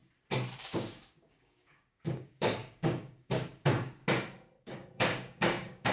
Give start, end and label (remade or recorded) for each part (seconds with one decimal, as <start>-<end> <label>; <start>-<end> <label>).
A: 0.0-0.6 recorded; 0.6-4.0 remade; 4.0-4.6 recorded; 4.6-5.9 remade

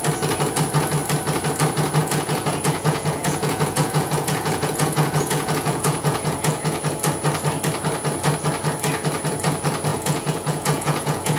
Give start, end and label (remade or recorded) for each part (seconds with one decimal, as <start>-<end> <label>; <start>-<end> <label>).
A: 0.0-2.0 recorded; 2.0-6.8 remade; 6.8-9.9 recorded; 9.9-11.4 remade

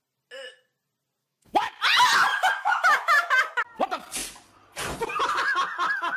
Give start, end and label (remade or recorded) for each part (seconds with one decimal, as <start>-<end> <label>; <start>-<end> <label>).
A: 0.0-1.2 recorded; 1.2-1.8 remade; 1.8-2.3 recorded; 2.3-3.3 remade; 3.3-6.2 recorded